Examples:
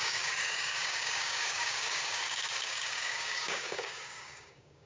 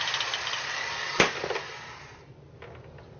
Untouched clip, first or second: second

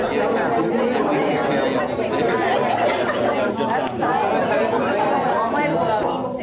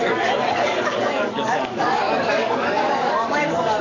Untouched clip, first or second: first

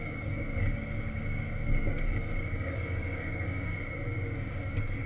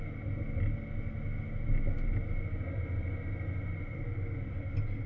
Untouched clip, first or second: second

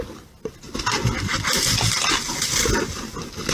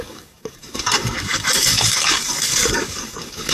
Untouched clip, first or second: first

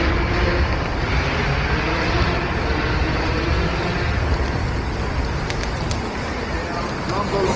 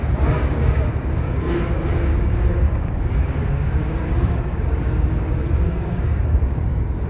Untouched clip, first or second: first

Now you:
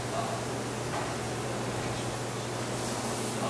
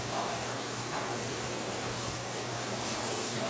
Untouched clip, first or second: first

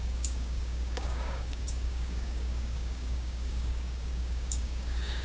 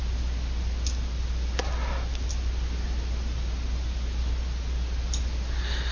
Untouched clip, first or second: second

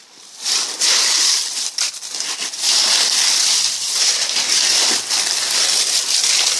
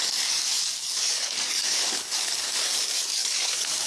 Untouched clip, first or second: first